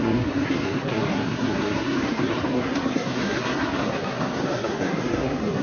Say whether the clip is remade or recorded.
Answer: remade